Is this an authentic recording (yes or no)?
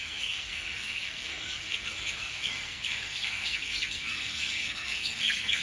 no